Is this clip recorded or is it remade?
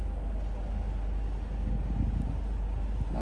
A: recorded